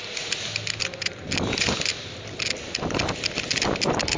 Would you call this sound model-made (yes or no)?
no